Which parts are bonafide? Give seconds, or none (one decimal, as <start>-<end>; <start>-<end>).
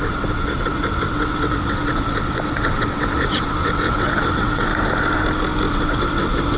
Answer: 4.7-5.7